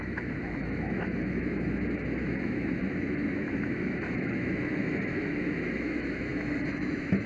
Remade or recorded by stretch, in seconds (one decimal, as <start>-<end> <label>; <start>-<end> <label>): 0.0-7.3 remade